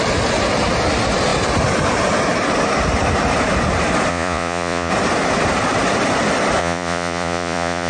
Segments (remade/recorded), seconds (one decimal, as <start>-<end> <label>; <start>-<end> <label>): 0.0-4.1 recorded; 4.1-4.9 remade; 4.9-6.6 recorded; 6.6-7.9 remade

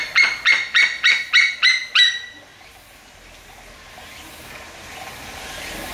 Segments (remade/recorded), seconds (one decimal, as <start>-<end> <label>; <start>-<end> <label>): 0.0-5.9 recorded

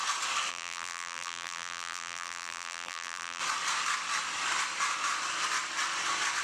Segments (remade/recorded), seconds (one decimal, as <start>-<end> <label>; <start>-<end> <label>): 0.0-0.5 recorded; 0.5-3.4 remade; 3.4-6.4 recorded

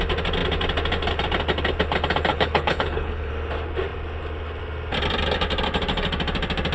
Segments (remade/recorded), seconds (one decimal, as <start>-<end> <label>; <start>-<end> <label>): 0.0-2.3 recorded; 2.3-3.3 remade; 3.3-6.7 recorded

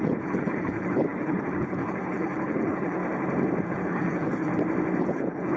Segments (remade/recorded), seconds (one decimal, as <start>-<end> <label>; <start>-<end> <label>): 0.0-3.0 remade; 3.0-3.6 recorded; 3.6-4.5 remade; 4.5-5.0 recorded; 5.0-5.6 remade

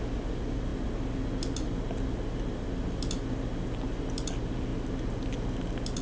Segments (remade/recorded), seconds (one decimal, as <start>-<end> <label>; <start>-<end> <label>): 0.0-6.0 recorded